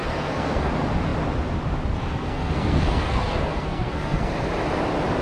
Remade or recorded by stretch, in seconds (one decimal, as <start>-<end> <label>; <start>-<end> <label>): 0.0-0.7 remade; 0.7-2.0 recorded; 2.0-4.3 remade; 4.3-5.2 recorded